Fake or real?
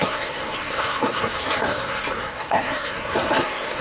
fake